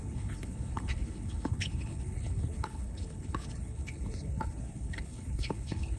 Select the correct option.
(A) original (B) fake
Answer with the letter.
B